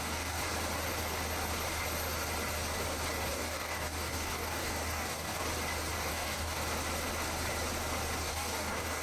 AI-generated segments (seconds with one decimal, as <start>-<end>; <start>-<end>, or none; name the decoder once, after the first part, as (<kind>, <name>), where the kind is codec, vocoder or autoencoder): 0.0-0.4 (codec, DAC); 3.3-5.4; 6.1-6.6; 8.2-9.0